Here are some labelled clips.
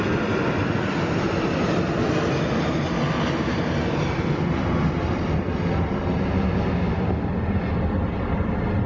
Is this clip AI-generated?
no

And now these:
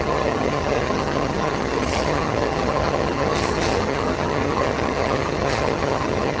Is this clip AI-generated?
yes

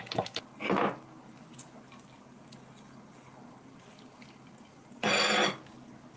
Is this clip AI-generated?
no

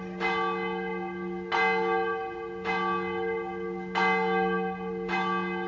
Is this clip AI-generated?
no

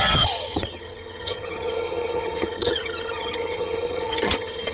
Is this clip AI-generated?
yes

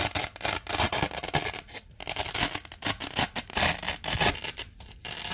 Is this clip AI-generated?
no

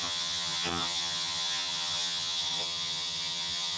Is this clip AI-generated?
yes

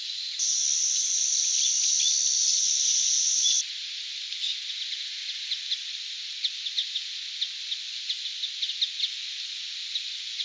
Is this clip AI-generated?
no